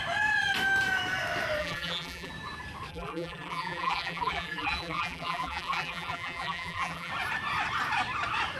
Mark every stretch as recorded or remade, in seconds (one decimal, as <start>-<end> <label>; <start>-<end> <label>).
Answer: 0.0-1.6 recorded; 1.6-2.3 remade; 2.3-2.9 recorded; 2.9-7.1 remade; 7.1-8.6 recorded